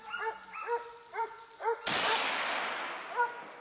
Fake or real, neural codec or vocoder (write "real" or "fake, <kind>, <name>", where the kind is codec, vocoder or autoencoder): real